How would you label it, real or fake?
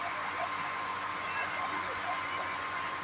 fake